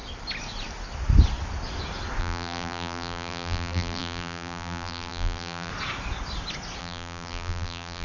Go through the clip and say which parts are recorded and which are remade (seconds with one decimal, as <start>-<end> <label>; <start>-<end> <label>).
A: 0.0-2.2 recorded; 2.2-5.7 remade; 5.7-6.8 recorded; 6.8-8.0 remade